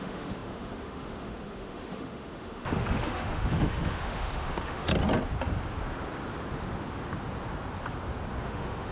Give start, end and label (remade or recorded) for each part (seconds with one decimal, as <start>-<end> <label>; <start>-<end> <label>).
0.0-4.9 remade; 4.9-8.4 recorded; 8.4-8.9 remade